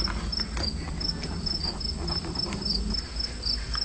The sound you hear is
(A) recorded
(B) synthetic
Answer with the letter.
A